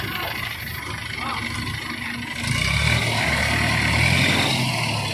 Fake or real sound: real